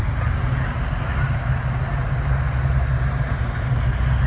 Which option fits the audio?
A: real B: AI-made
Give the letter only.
A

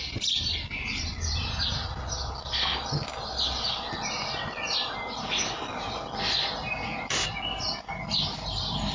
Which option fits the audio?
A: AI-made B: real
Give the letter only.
B